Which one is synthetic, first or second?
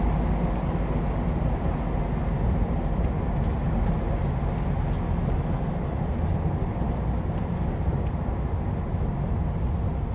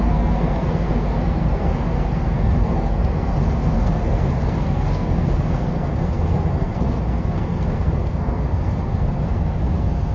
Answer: second